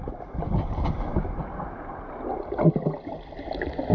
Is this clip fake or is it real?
real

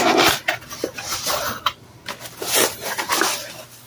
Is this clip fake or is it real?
real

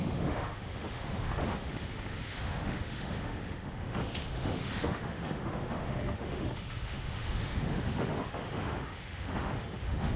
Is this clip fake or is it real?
fake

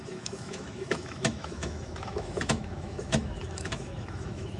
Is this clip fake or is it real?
fake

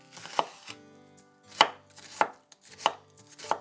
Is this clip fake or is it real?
real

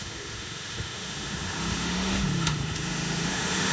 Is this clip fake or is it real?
fake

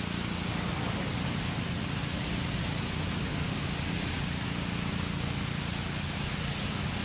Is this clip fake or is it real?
real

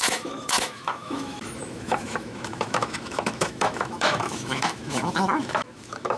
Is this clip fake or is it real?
fake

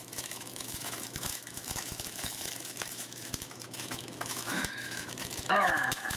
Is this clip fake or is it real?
fake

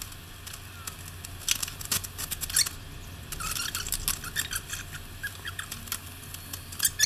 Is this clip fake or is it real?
real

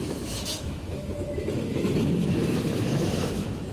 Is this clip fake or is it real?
fake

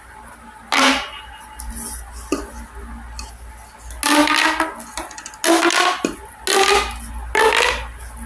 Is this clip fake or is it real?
real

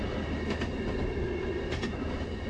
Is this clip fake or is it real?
real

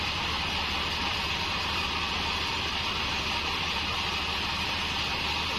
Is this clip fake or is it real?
real